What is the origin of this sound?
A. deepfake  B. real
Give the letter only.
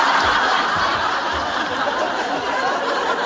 A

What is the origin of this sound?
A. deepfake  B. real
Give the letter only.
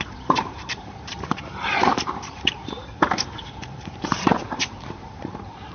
A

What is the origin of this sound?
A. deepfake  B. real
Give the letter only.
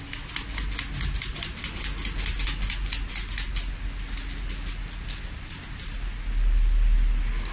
B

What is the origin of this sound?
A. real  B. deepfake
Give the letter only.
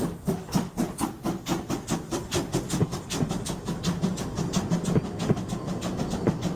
A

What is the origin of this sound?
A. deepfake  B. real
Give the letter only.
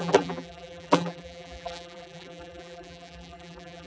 A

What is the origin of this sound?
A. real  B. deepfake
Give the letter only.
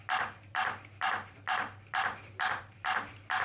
B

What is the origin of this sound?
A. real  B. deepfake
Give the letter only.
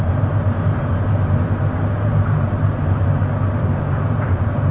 B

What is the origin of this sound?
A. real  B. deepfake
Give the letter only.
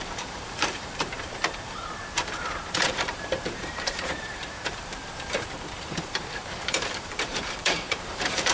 B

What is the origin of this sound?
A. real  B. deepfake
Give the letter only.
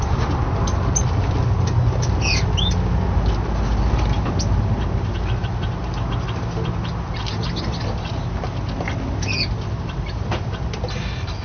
A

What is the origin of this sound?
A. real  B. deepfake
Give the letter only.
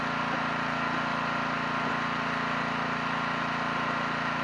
A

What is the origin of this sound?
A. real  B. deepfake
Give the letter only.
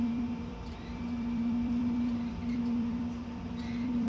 B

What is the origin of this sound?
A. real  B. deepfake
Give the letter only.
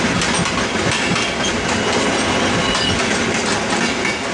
A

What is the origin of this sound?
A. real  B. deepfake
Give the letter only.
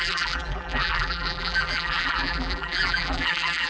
B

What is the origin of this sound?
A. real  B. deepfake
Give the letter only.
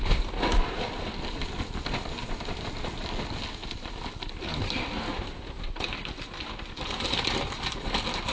A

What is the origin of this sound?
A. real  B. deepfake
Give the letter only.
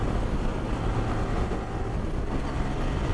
A